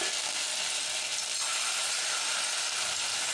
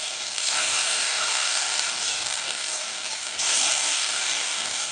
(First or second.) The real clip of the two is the first